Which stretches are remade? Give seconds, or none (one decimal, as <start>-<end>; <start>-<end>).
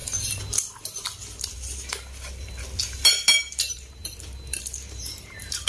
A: 3.4-4.0; 4.6-5.7